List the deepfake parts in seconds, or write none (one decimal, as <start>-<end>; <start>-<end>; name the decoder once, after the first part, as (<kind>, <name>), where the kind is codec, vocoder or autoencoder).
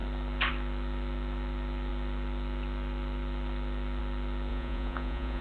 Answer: 4.5-5.4 (vocoder, Vocos)